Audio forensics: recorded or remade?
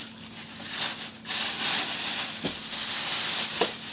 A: recorded